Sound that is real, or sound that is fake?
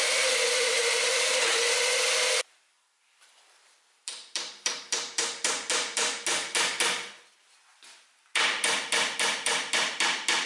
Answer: fake